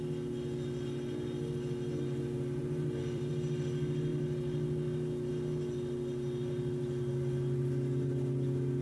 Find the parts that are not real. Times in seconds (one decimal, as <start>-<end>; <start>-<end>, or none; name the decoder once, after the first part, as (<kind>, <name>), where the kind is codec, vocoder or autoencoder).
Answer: 2.6-3.3 (vocoder, BigVGAN v2)